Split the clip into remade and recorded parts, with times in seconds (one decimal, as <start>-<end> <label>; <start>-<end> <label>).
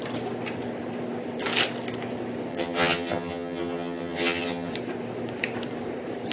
0.0-2.5 recorded; 2.5-4.7 remade; 4.7-6.3 recorded